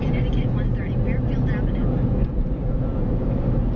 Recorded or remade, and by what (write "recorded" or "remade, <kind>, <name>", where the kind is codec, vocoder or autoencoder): recorded